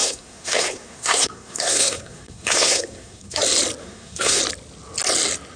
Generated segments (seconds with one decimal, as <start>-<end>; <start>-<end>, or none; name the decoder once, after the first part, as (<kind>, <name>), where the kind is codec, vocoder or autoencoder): 0.0-3.4 (codec, SNAC); 3.8-4.4

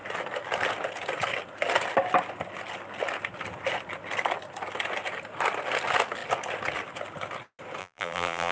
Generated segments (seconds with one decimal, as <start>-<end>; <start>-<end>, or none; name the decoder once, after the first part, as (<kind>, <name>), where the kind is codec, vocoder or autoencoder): 7.8-8.5 (vocoder, BigVGAN v2)

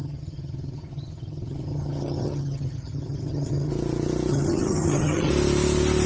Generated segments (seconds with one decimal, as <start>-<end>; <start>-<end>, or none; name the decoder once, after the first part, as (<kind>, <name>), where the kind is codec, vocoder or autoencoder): 0.0-3.7 (vocoder, HiFi-GAN); 4.3-5.3

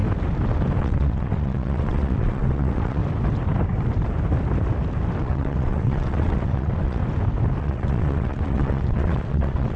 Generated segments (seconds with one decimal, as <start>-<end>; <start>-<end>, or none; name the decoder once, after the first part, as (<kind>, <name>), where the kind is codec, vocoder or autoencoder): 0.8-3.0 (vocoder, WaveNeXt); 5.2-7.0; 7.6-9.8